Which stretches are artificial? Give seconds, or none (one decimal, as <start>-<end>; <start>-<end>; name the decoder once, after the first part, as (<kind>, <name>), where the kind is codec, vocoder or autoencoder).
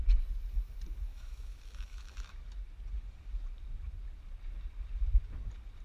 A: 1.1-2.4 (autoencoder, DAC-VAE)